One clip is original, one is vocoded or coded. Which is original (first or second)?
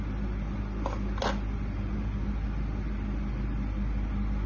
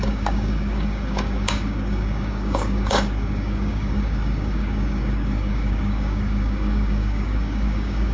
first